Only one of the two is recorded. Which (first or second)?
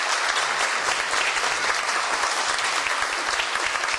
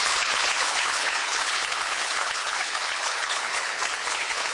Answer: first